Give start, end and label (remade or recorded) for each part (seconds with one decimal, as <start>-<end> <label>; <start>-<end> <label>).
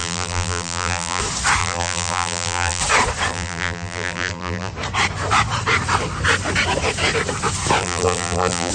0.0-1.2 remade; 1.2-1.6 recorded; 1.6-2.8 remade; 2.8-3.3 recorded; 3.3-4.7 remade; 4.7-7.8 recorded; 7.8-8.7 remade